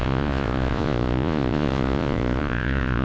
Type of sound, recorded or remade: remade